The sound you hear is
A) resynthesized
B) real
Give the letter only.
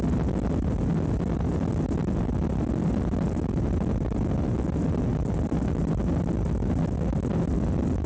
B